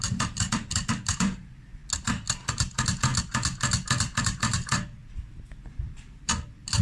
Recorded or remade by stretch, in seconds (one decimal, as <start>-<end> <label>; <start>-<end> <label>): 0.0-1.8 remade; 1.8-2.5 recorded; 2.5-3.1 remade; 3.1-4.2 recorded; 4.2-5.0 remade; 5.0-5.6 recorded; 5.6-6.8 remade